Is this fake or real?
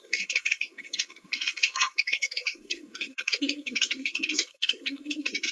fake